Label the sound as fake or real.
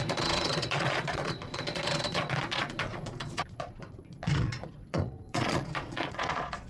fake